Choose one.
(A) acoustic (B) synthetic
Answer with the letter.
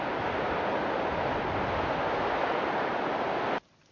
A